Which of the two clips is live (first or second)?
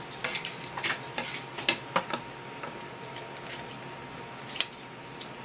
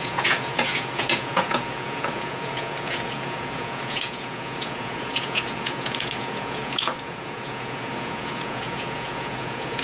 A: first